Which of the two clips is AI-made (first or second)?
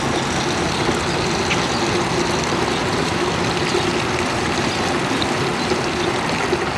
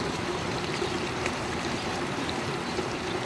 second